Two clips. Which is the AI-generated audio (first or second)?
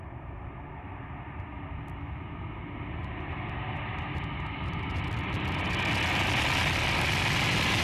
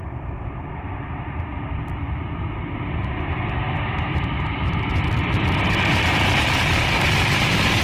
second